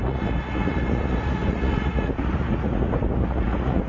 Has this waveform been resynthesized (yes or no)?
yes